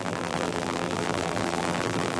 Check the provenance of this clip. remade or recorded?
remade